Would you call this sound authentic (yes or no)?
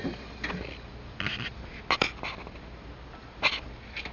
yes